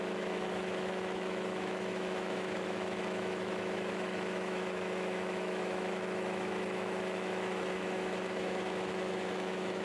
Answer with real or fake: fake